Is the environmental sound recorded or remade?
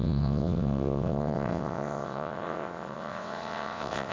remade